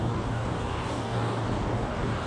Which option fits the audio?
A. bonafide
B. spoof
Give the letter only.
B